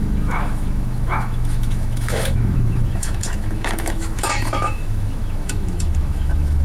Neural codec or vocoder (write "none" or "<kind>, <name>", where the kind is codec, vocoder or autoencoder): autoencoder, DAC-VAE